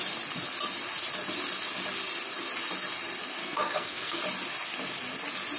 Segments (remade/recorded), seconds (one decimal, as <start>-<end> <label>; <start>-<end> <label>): 0.0-3.4 recorded; 3.4-4.2 remade; 4.2-5.6 recorded